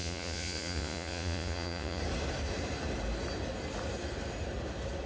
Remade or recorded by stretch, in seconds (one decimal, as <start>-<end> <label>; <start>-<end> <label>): 0.0-2.0 remade; 2.0-5.1 recorded